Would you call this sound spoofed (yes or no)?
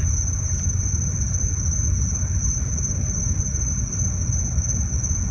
no